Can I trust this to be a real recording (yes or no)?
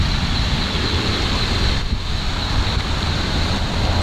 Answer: yes